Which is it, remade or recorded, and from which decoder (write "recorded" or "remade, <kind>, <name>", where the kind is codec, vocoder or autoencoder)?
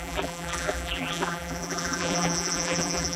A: remade, vocoder, BigVGAN v2